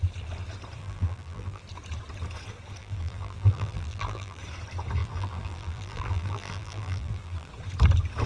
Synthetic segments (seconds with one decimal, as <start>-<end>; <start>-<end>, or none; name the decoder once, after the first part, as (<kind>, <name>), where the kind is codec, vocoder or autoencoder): 0.8-1.6 (vocoder, BigVGAN v2); 2.8-4.4; 5.0-7.5